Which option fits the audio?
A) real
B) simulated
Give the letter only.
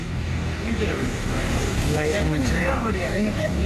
B